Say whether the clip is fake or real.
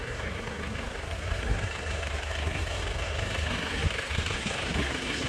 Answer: fake